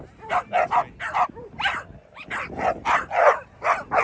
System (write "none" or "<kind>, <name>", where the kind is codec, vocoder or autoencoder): none